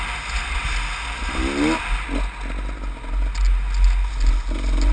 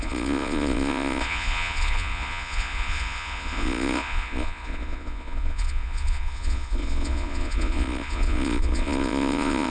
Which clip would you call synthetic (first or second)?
second